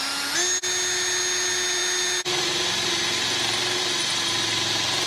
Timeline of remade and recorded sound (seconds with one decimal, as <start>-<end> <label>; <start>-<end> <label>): 0.0-5.1 recorded